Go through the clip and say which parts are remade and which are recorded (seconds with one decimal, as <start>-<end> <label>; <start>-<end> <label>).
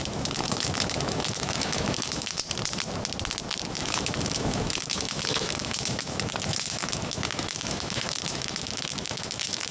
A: 0.0-2.4 remade; 2.4-3.7 recorded; 3.7-9.7 remade